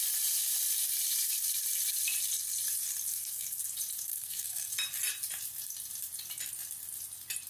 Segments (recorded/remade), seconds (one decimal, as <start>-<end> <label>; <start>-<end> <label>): 0.0-3.1 recorded; 3.1-3.6 remade; 3.6-4.1 recorded; 4.1-4.7 remade; 4.7-7.5 recorded